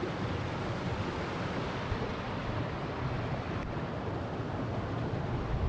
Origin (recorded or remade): recorded